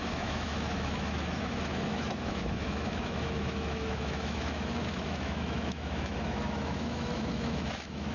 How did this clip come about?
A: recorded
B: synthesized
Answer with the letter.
B